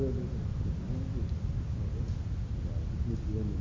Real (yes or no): yes